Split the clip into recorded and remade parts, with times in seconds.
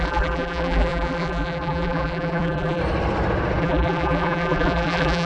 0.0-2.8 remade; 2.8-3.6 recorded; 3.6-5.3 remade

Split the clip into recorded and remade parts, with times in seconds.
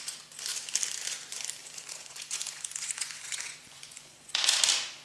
0.0-1.6 recorded; 1.6-4.6 remade; 4.6-5.0 recorded